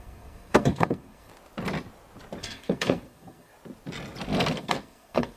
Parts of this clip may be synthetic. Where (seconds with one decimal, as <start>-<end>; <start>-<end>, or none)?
0.0-1.3; 2.4-3.5; 4.5-5.4